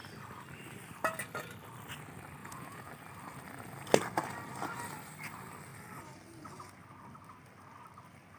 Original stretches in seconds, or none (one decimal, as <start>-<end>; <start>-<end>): 0.0-2.4; 2.9-8.4